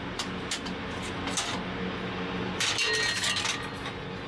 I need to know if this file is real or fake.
real